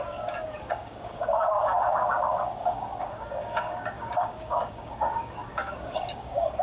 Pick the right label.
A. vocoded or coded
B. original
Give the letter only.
A